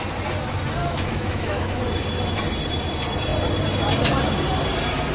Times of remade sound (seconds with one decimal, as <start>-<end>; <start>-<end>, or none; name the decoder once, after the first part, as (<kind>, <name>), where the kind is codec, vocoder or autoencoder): 0.8-1.8 (autoencoder, DAC-VAE)